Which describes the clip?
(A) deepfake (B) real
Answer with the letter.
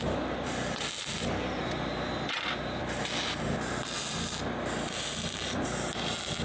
B